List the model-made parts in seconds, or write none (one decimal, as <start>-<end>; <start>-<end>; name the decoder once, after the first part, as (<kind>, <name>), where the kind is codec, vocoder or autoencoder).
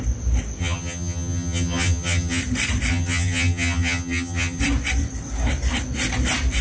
0.6-2.4 (vocoder, HiFi-GAN); 2.9-4.6